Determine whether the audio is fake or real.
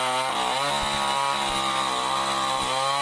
real